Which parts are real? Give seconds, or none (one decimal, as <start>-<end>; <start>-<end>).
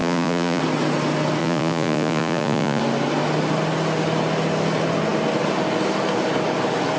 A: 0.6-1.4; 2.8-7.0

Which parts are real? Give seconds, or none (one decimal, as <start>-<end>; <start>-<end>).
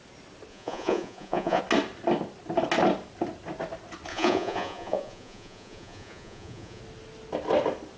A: 0.0-0.5; 1.6-4.1; 6.8-8.0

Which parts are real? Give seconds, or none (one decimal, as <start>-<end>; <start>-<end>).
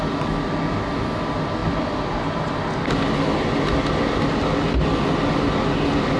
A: 0.0-6.2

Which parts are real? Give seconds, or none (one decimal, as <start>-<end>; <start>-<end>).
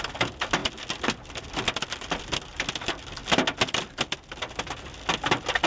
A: 0.0-5.7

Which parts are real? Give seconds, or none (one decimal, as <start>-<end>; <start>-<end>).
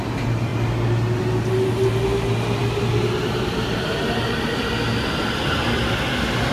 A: 0.0-6.5